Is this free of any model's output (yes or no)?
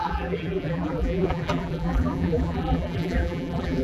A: no